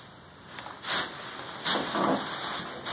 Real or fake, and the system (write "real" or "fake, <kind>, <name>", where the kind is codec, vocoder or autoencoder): real